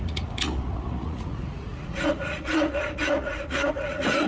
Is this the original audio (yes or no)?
no